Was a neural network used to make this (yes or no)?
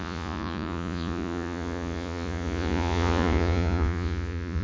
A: yes